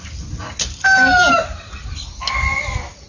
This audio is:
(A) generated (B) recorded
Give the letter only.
B